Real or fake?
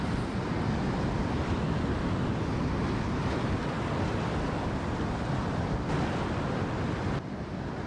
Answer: real